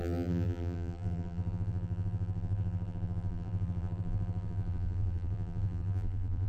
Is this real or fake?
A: fake